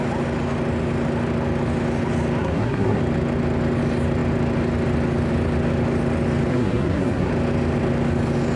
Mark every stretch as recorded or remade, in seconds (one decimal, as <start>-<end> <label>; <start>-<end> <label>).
0.0-2.4 recorded; 2.4-3.0 remade; 3.0-6.5 recorded; 6.5-7.3 remade; 7.3-8.6 recorded